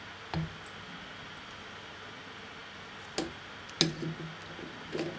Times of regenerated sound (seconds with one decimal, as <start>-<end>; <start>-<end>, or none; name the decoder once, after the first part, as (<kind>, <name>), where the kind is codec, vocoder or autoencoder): none